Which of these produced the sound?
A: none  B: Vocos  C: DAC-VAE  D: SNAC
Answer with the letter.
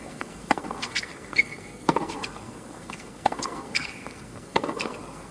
D